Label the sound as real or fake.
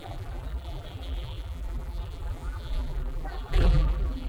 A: fake